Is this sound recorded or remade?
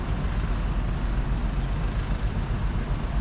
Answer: recorded